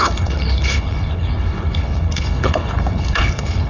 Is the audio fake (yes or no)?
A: yes